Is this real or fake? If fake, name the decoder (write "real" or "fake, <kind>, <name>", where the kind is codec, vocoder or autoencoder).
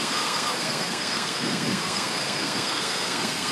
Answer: fake, codec, SNAC